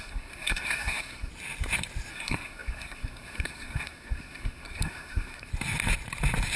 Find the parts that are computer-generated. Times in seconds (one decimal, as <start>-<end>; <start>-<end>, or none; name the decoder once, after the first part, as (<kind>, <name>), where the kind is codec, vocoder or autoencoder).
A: 0.0-1.3 (codec, SNAC); 2.1-5.5